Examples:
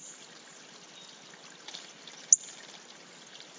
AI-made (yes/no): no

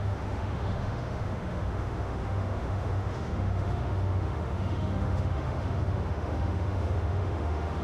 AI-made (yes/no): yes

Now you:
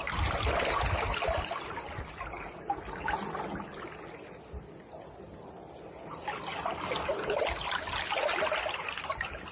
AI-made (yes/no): no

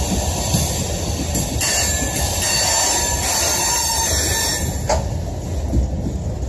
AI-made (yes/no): no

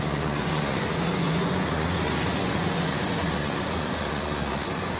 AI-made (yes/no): yes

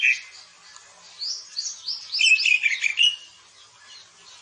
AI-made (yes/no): no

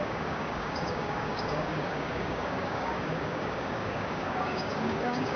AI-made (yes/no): yes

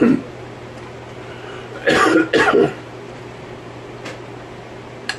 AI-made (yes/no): no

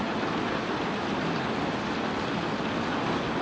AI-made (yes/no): no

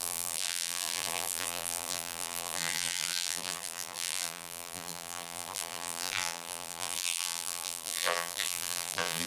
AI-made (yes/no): yes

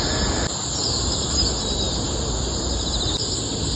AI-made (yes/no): no